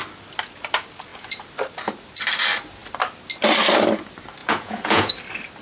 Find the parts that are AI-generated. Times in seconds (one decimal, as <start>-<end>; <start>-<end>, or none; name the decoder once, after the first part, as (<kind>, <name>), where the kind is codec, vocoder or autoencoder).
4.4-5.1 (vocoder, Vocos)